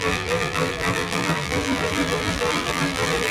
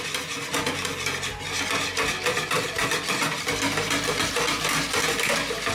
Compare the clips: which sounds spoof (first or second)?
first